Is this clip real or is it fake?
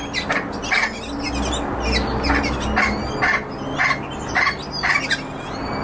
real